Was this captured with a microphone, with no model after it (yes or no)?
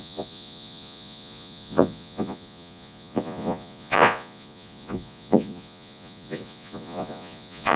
no